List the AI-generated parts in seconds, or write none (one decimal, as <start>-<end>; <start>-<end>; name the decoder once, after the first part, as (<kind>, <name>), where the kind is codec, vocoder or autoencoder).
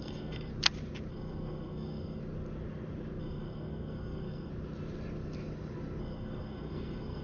0.0-0.5 (codec, SNAC); 1.1-2.2; 3.2-4.5; 6.0-7.2